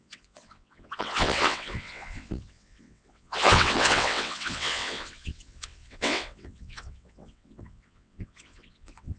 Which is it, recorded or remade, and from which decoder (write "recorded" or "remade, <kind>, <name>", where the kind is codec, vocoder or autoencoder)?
remade, vocoder, WaveNeXt